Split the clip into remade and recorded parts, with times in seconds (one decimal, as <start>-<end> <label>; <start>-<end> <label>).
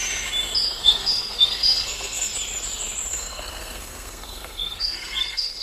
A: 0.0-0.8 recorded; 0.8-2.3 remade; 2.3-3.1 recorded; 3.1-5.6 remade